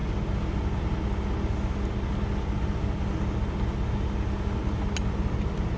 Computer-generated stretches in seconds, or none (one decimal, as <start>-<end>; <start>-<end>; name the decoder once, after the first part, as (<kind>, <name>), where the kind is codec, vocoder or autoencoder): none